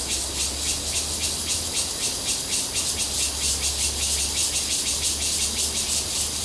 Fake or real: real